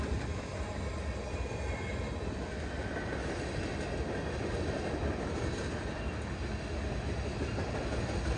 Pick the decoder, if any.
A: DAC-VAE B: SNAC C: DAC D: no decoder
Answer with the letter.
D